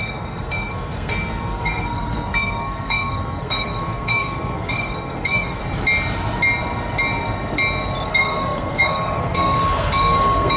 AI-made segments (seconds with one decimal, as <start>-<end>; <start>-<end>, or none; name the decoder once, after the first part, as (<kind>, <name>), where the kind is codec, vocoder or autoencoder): 0.0-5.6 (codec, SNAC); 8.1-10.6